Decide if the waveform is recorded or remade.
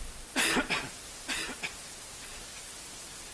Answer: recorded